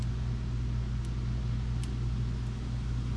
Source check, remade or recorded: recorded